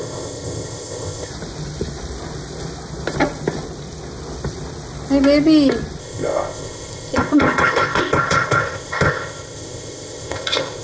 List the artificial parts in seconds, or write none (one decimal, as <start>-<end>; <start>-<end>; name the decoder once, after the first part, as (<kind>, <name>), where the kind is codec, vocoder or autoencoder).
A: 0.0-1.3 (codec, ZipCodec); 6.0-10.8